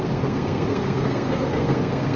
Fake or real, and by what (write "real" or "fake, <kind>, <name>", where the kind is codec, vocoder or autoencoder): fake, codec, SNAC